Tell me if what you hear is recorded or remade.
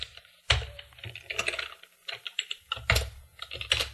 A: remade